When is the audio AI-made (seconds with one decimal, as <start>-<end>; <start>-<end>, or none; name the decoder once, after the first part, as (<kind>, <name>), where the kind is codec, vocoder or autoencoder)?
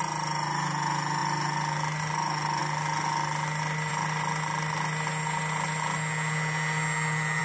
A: none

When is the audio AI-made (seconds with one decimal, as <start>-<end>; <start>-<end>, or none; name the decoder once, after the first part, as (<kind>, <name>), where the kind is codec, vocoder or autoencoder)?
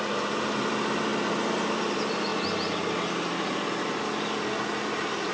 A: 0.0-2.3 (vocoder, BigVGAN v2)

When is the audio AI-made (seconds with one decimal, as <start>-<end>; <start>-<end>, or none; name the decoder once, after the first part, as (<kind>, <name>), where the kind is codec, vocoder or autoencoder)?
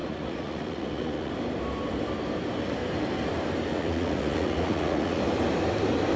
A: 0.0-1.3 (vocoder, Vocos); 3.7-5.2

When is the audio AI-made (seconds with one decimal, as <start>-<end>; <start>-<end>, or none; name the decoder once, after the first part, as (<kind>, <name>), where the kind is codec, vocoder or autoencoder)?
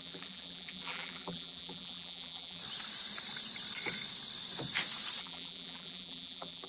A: 0.0-2.6 (vocoder, BigVGAN v2); 5.2-6.7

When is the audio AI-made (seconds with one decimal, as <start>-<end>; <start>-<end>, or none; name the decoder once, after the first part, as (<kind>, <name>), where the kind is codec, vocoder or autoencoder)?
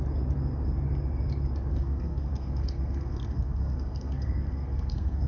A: 1.7-5.3 (codec, SNAC)